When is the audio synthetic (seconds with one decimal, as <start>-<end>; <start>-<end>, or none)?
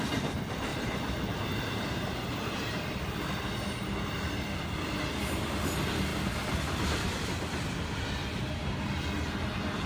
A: 0.7-3.4